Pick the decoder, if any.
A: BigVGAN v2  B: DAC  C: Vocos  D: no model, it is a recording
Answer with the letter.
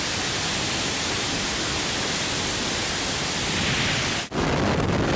D